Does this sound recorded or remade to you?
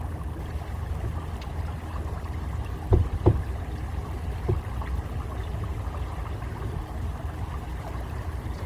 recorded